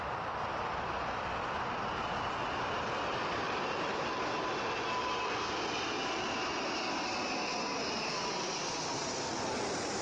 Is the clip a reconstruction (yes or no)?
no